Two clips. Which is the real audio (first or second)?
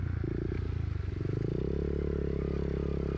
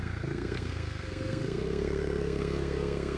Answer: first